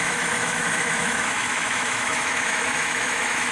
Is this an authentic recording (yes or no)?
no